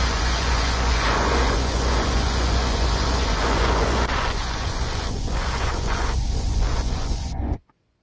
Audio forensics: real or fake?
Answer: fake